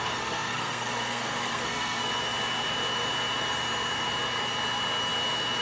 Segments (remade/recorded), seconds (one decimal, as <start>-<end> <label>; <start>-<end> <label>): 0.0-2.1 remade; 2.1-5.6 recorded